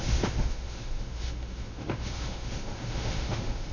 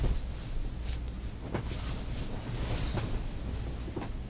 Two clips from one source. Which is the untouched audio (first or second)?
second